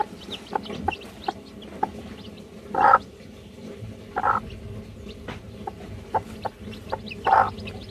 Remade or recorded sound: recorded